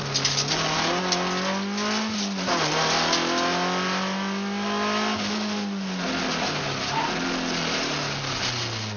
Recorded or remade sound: recorded